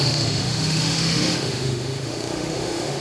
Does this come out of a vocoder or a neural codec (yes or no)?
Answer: yes